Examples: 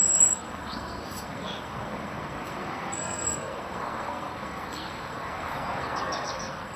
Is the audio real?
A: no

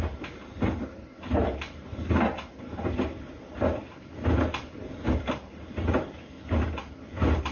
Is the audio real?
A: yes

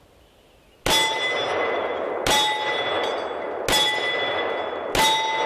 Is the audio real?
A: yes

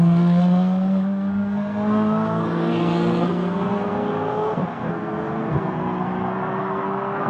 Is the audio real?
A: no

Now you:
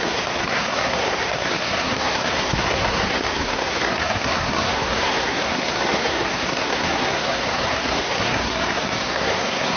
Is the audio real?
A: no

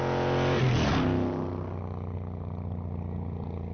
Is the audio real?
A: yes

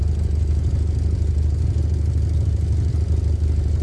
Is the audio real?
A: yes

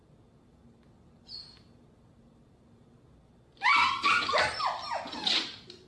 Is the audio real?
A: yes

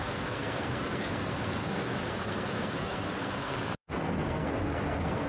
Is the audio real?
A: no